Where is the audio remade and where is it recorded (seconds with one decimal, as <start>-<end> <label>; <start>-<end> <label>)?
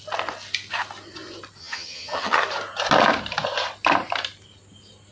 0.0-1.6 recorded; 1.6-2.4 remade; 2.4-5.1 recorded